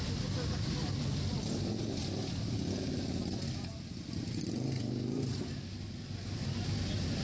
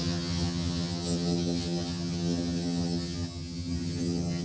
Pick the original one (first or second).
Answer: first